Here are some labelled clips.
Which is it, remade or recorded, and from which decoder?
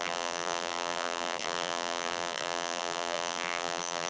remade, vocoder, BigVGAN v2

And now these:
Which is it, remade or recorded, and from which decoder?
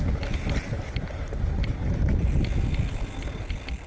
recorded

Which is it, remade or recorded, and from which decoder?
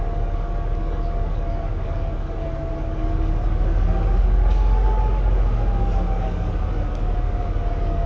remade, codec, DAC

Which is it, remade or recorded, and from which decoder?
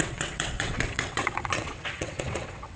remade, vocoder, WaveNeXt